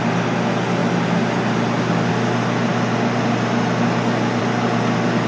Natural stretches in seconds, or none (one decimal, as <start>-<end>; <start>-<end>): 0.0-5.3